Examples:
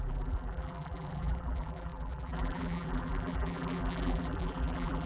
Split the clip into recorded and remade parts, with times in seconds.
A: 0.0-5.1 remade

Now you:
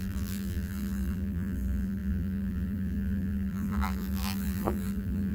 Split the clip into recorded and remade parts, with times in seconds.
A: 0.0-5.3 remade

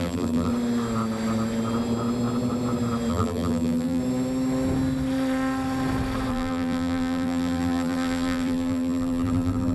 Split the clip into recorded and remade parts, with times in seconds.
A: 0.0-0.5 remade; 0.5-3.1 recorded; 3.1-4.0 remade; 4.0-6.3 recorded; 6.3-9.7 remade

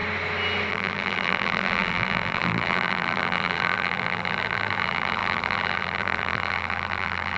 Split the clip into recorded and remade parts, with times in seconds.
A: 0.0-0.7 recorded; 0.7-7.4 remade

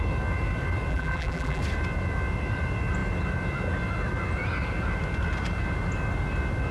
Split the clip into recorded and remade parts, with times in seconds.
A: 0.0-0.9 recorded; 0.9-1.6 remade; 1.6-6.7 recorded

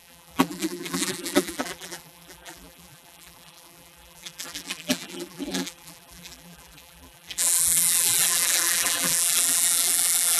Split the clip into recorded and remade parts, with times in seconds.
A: 0.0-10.4 remade

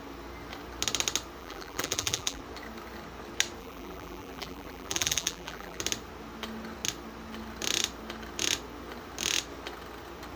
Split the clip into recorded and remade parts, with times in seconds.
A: 0.0-1.4 recorded; 1.4-2.4 remade; 2.4-3.6 recorded; 3.6-5.8 remade; 5.8-10.4 recorded

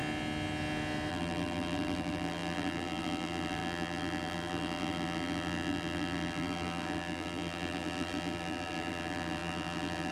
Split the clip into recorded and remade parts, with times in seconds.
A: 0.0-1.1 recorded; 1.1-10.1 remade